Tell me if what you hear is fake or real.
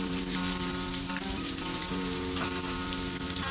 fake